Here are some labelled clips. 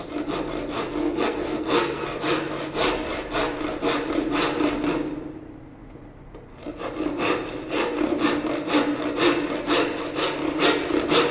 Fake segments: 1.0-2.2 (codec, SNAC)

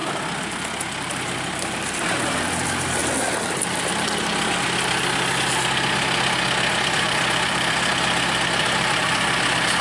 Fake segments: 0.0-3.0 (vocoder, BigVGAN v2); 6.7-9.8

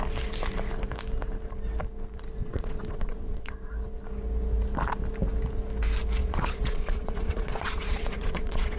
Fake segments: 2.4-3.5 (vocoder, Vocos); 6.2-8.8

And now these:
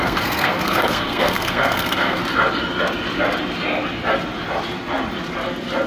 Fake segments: 0.0-2.2 (codec, SNAC)

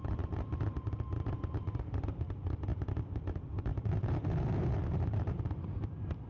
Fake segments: 0.0-6.3 (vocoder, BigVGAN v2)